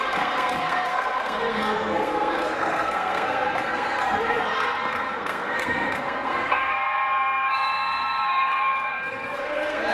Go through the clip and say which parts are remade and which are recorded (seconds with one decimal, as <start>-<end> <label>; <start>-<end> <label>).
0.0-9.9 remade